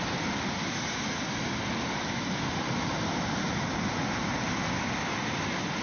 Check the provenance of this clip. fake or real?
real